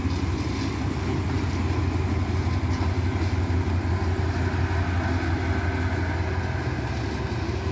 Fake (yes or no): no